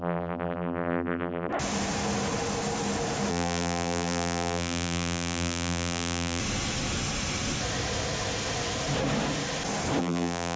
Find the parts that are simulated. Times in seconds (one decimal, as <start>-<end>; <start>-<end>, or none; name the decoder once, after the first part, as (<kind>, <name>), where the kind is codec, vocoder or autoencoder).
0.0-1.5 (vocoder, BigVGAN v2); 3.3-6.4; 10.0-10.6